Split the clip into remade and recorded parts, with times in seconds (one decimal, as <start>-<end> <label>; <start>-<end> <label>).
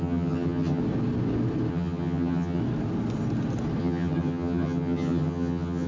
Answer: 0.0-0.8 remade; 0.8-1.7 recorded; 1.7-2.6 remade; 2.6-3.8 recorded; 3.8-5.9 remade